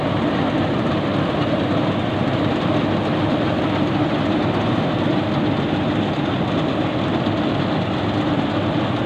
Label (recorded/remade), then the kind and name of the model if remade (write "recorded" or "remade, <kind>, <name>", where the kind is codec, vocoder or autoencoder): recorded